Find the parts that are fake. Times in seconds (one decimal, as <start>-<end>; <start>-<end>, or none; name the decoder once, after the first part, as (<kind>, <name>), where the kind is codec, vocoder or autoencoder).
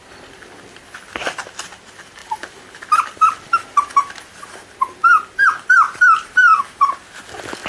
none